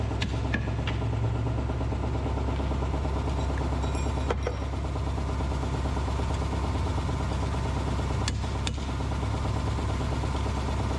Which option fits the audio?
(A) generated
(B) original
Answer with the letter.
B